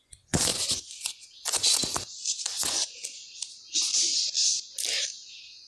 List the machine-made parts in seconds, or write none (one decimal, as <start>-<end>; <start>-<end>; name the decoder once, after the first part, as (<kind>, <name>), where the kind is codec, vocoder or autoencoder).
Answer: 0.0-1.8 (vocoder, Vocos); 2.3-3.0; 5.2-5.7